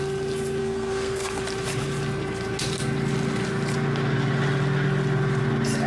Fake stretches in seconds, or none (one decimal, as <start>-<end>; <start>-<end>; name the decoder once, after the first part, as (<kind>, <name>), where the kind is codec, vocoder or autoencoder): 0.6-1.4 (codec, SNAC)